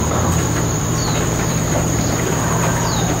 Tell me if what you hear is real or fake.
fake